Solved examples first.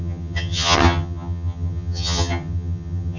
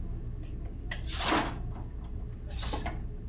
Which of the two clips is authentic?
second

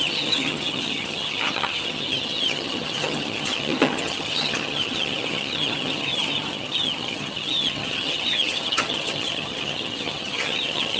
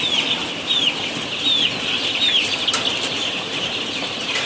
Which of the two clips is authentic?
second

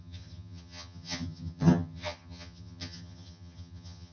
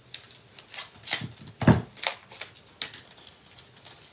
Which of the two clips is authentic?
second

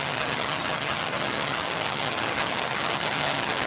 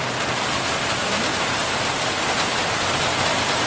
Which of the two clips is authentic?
second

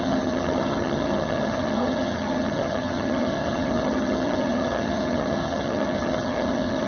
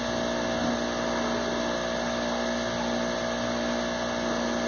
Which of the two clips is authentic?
second